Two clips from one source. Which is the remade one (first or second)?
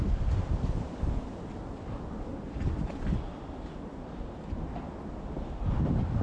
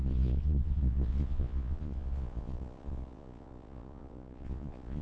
second